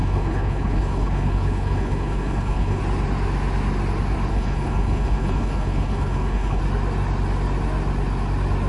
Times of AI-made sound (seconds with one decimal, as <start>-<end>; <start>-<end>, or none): 0.0-2.8; 4.3-6.6